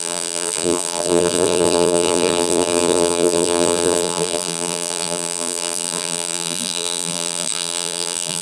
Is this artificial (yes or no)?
yes